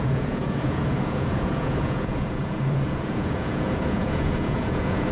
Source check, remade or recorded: remade